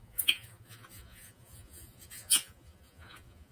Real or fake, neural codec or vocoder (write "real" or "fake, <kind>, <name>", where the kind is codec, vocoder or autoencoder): fake, vocoder, Vocos